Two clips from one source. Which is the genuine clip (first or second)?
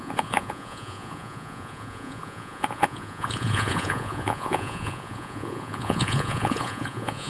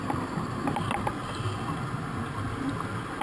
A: second